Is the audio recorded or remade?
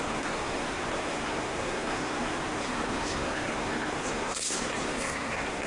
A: remade